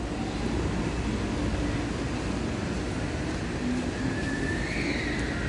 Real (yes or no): yes